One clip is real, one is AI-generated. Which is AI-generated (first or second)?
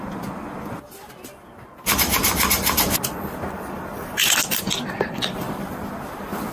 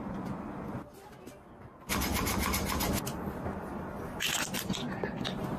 first